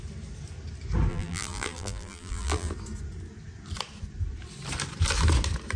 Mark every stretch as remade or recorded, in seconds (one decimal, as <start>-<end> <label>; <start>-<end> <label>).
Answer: 0.0-1.1 recorded; 1.1-2.7 remade; 2.7-5.8 recorded